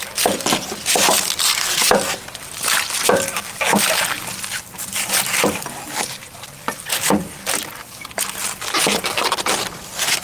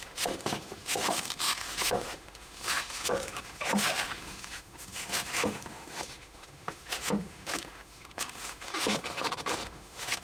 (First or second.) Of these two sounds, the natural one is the first